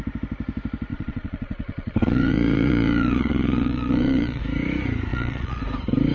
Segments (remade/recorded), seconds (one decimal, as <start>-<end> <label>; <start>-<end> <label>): 0.0-0.9 recorded; 0.9-4.4 remade; 4.4-5.1 recorded; 5.1-5.6 remade; 5.6-6.1 recorded